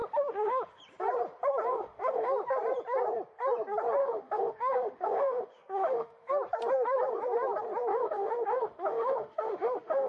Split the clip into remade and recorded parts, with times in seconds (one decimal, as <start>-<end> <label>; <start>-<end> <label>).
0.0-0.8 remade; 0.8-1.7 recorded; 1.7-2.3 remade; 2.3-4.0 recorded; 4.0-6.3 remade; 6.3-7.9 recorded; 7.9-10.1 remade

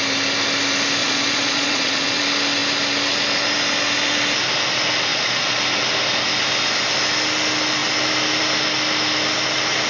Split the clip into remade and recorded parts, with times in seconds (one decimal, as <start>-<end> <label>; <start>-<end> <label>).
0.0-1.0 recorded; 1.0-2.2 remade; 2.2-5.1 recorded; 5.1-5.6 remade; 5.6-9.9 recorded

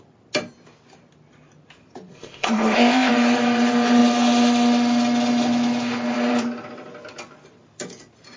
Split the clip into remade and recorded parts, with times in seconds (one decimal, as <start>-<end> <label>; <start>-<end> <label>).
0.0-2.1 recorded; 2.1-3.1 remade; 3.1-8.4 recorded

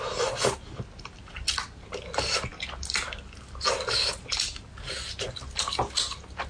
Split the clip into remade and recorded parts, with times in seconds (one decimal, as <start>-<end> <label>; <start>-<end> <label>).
0.0-6.5 recorded

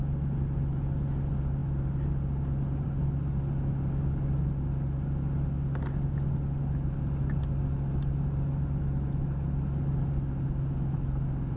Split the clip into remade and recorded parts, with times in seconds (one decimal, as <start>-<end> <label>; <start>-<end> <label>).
0.0-11.6 recorded

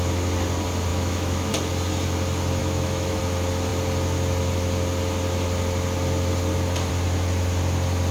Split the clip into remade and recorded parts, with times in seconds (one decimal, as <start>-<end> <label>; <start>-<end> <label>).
0.0-0.9 recorded; 0.9-1.5 remade; 1.5-2.6 recorded; 2.6-3.2 remade; 3.2-8.1 recorded

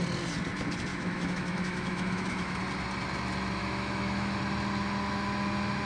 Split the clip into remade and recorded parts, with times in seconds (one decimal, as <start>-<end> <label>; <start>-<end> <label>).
0.0-0.9 recorded; 0.9-2.6 remade; 2.6-3.6 recorded; 3.6-4.4 remade; 4.4-5.9 recorded